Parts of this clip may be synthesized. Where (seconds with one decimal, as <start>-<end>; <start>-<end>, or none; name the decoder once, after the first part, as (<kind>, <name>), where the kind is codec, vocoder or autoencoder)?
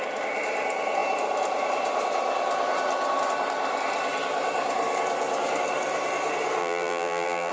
6.6-7.5 (vocoder, BigVGAN v2)